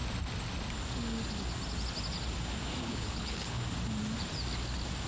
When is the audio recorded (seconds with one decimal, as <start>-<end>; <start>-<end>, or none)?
0.0-2.8; 3.6-5.1